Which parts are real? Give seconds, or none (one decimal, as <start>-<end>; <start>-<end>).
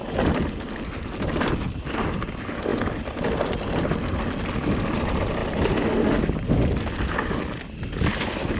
0.0-8.6